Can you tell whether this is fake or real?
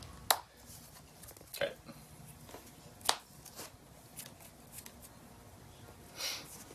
real